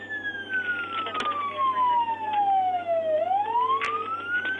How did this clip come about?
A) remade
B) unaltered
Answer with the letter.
B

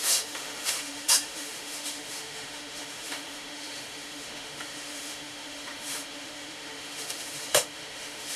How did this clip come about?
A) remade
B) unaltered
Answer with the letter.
A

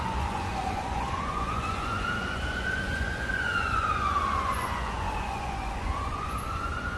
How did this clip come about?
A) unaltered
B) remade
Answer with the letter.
B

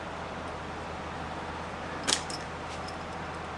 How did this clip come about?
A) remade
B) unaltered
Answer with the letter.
A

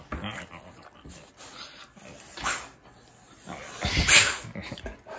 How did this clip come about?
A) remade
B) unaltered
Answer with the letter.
B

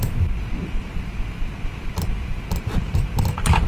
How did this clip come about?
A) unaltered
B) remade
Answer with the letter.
A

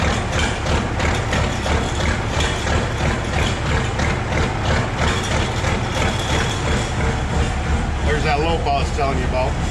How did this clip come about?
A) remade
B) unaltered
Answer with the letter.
B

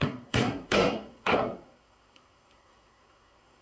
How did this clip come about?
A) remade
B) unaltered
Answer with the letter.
A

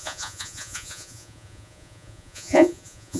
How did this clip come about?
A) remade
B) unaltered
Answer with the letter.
A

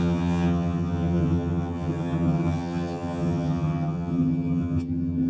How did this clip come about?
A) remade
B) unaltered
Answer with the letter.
A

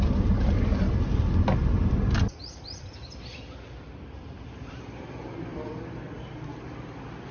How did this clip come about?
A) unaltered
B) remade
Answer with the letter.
B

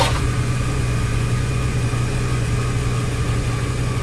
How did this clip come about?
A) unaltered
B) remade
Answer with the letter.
B